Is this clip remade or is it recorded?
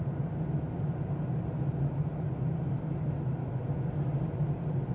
recorded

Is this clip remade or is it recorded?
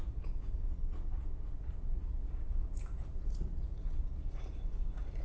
remade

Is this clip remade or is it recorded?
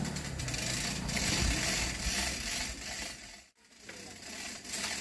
recorded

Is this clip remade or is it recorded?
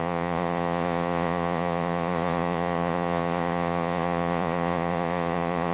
remade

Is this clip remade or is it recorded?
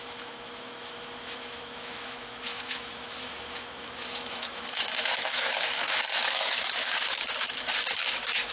remade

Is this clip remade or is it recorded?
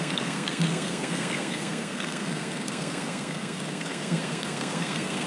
remade